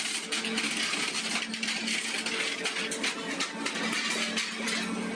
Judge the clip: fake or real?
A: real